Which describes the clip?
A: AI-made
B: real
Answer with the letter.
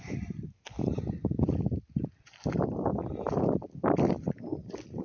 B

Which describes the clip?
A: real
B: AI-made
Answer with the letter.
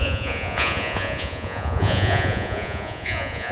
B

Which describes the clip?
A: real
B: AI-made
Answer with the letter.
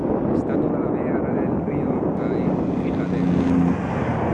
A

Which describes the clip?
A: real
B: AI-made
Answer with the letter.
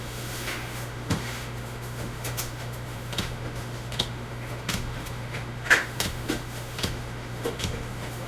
B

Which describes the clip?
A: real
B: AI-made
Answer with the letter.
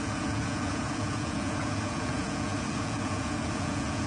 B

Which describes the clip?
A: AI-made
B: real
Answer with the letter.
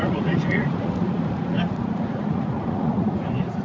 A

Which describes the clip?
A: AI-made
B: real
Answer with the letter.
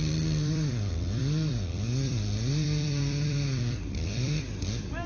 A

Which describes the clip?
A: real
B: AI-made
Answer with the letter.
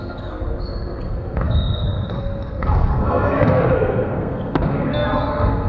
B